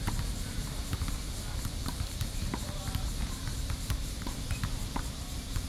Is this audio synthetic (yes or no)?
yes